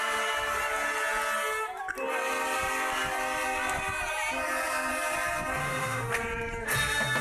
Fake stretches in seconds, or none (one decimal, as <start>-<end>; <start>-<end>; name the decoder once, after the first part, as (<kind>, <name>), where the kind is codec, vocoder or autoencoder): 5.6-6.1 (autoencoder, DAC-VAE)